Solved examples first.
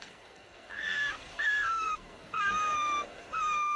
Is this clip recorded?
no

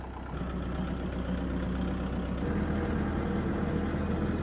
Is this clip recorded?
yes